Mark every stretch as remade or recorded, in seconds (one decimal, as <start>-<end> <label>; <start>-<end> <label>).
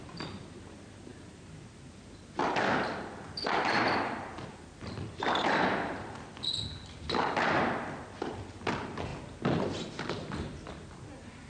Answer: 0.0-11.5 recorded